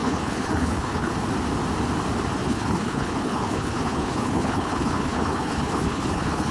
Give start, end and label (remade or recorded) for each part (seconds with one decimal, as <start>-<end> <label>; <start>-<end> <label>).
0.0-1.1 remade; 1.1-2.4 recorded; 2.4-6.5 remade